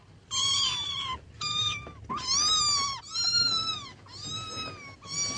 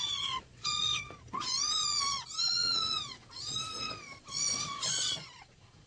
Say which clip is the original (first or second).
first